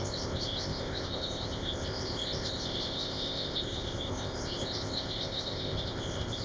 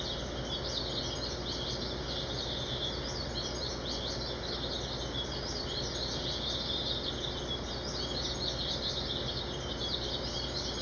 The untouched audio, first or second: second